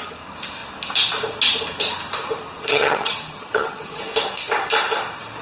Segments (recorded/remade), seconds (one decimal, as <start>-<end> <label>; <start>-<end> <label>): 0.0-2.7 recorded; 2.7-4.0 remade; 4.0-5.4 recorded

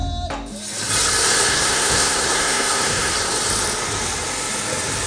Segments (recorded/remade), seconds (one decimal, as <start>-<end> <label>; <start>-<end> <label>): 0.0-1.5 recorded; 1.5-3.1 remade; 3.1-5.1 recorded